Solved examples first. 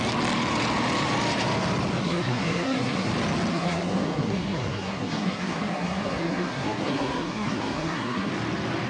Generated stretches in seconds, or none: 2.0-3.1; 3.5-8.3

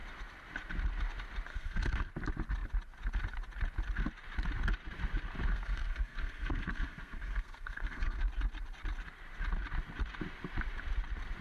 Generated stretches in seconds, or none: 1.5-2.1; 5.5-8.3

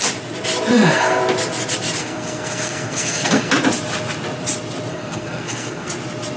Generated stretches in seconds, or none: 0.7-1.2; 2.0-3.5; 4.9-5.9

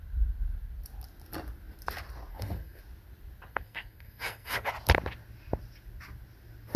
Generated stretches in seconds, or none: 2.3-2.8; 3.5-4.7